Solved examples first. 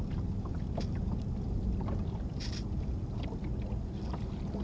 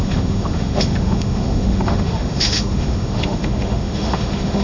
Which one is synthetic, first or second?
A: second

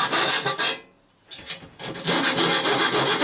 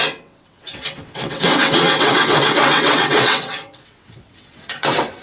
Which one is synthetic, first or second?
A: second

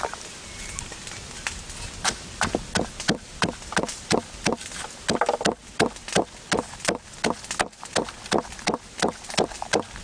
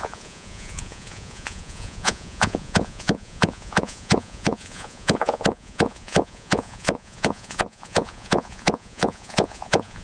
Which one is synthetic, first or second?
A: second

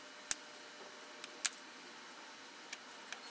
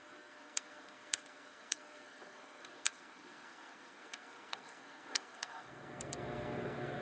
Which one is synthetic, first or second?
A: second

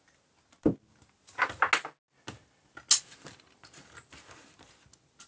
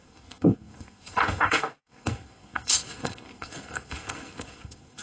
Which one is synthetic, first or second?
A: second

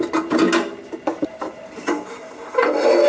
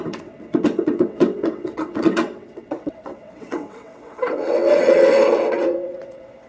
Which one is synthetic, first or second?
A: second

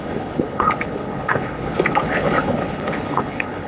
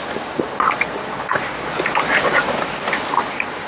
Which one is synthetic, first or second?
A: first